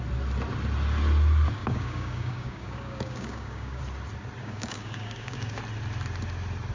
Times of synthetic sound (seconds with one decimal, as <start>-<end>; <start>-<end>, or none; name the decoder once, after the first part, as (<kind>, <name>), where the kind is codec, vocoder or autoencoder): 1.6-3.8 (codec, DAC); 4.4-5.6